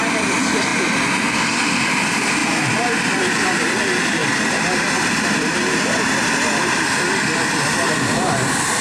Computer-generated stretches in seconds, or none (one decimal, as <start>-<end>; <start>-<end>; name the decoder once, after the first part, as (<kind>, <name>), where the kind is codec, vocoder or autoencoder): 0.0-8.8 (vocoder, BigVGAN v2)